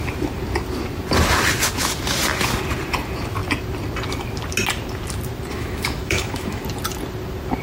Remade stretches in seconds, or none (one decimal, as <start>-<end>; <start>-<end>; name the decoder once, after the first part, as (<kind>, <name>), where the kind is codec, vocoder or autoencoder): 5.5-6.6 (autoencoder, DAC-VAE)